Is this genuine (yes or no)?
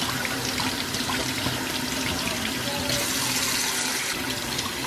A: yes